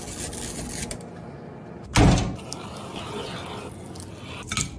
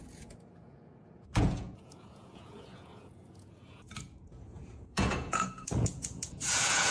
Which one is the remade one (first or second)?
second